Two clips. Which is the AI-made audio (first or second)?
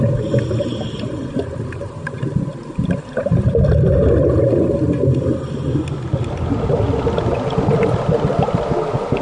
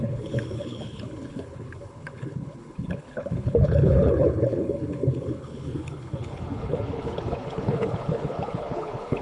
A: second